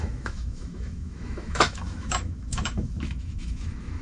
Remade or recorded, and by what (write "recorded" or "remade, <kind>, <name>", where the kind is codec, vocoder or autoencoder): remade, autoencoder, DAC-VAE